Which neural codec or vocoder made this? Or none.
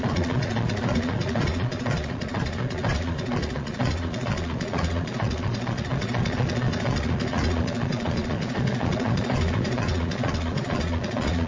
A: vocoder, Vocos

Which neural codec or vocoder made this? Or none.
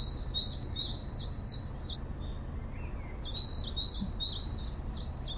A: none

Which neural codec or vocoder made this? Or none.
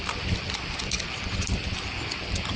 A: none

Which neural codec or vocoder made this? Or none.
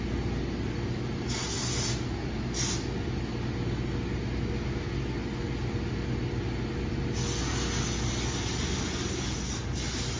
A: none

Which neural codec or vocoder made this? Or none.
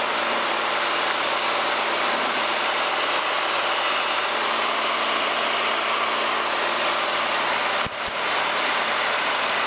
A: none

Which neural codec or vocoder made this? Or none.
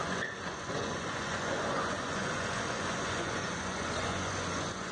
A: vocoder, Vocos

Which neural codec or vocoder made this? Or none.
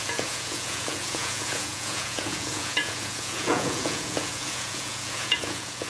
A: vocoder, Vocos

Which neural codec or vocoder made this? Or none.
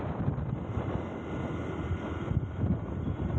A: none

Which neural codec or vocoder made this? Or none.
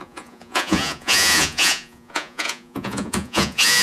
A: vocoder, Vocos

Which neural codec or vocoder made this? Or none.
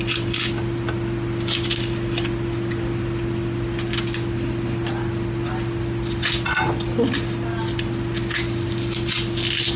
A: none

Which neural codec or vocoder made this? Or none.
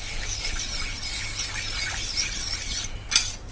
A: none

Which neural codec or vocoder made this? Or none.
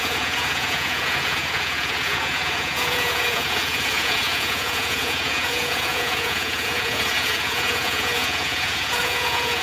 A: vocoder, Vocos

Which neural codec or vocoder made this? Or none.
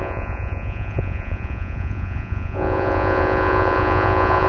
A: vocoder, Vocos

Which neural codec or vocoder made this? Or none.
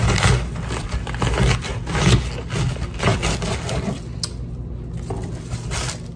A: none